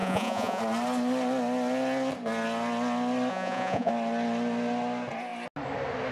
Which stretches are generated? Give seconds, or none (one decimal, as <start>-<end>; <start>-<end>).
0.0-0.6; 3.3-3.9